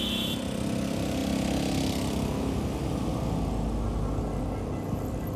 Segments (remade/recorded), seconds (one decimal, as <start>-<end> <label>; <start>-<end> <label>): 0.0-5.4 recorded